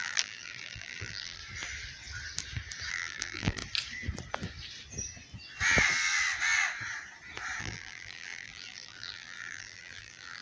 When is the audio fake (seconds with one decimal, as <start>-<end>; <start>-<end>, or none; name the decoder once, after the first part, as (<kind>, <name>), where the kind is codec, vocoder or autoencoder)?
0.0-1.4 (vocoder, BigVGAN v2); 2.9-3.6; 7.6-10.4